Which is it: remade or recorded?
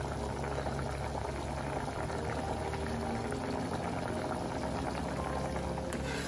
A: recorded